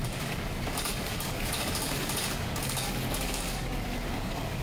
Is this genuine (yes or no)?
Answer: no